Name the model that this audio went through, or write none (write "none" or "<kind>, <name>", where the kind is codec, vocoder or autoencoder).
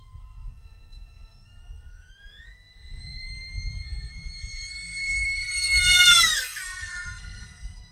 codec, SNAC